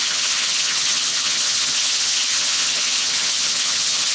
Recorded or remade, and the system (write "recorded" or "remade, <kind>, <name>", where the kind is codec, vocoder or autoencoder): remade, vocoder, HiFi-GAN